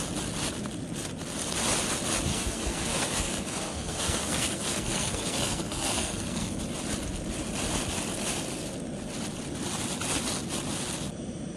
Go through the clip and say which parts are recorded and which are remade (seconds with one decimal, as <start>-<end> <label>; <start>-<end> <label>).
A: 0.0-2.3 recorded; 2.3-6.6 remade; 6.6-11.6 recorded